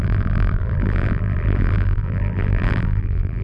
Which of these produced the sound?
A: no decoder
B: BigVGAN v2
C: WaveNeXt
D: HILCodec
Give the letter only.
B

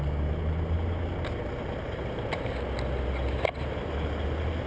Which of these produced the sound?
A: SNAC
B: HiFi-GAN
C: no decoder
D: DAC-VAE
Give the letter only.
C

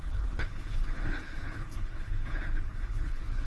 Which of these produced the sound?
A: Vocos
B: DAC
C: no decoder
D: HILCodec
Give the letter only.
D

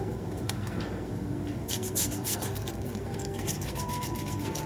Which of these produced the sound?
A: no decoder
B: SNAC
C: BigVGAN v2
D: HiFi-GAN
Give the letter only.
B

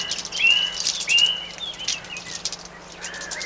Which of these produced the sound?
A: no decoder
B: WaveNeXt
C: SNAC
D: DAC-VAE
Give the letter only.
A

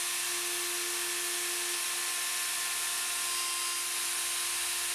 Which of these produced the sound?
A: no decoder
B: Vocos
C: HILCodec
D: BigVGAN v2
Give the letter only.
A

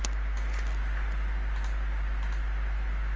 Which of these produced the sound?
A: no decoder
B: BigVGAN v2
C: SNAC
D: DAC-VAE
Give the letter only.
A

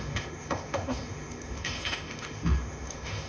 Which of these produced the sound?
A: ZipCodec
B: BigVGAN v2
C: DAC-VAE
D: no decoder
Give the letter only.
C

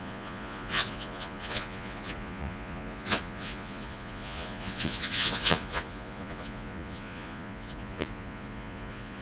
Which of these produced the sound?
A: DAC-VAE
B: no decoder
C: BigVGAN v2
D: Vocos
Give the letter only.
D